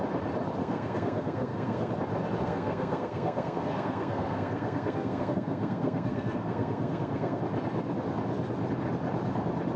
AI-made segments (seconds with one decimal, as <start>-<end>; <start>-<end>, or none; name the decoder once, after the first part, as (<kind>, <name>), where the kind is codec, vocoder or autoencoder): 0.6-1.9 (codec, SNAC); 2.4-7.4